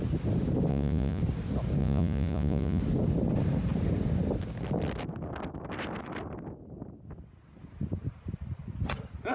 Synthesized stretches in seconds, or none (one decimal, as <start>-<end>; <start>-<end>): 0.7-1.2; 1.8-2.8